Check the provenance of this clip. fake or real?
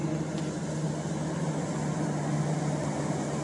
real